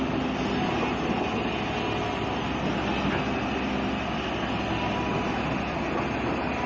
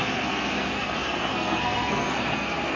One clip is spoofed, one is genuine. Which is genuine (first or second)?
first